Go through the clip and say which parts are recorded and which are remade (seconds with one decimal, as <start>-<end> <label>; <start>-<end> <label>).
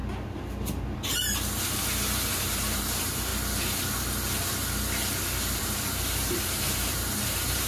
0.0-1.8 recorded; 1.8-3.3 remade; 3.3-5.6 recorded; 5.6-7.7 remade